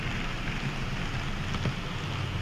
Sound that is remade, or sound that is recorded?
recorded